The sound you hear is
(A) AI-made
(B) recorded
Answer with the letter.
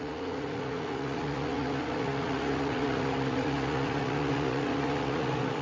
A